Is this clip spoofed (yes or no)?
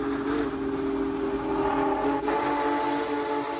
no